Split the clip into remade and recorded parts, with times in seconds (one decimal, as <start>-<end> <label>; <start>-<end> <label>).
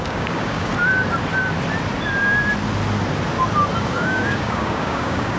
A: 0.0-0.7 remade; 0.7-3.9 recorded; 3.9-5.4 remade